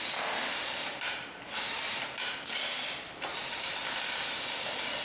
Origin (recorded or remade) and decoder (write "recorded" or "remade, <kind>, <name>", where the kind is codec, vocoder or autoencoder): recorded